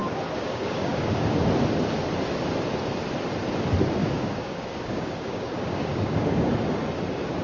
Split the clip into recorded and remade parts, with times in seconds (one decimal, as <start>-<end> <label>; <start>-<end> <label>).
0.0-1.5 remade; 1.5-4.0 recorded; 4.0-6.5 remade; 6.5-7.4 recorded